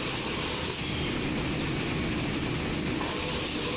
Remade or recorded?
recorded